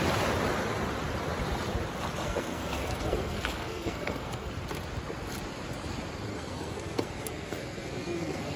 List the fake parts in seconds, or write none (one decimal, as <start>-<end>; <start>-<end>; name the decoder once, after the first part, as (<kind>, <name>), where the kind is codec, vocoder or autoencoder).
2.2-4.5 (codec, SNAC); 6.3-8.6